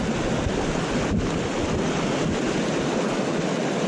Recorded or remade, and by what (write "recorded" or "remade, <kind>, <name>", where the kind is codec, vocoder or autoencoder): recorded